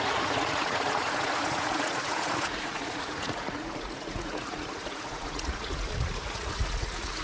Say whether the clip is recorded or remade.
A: remade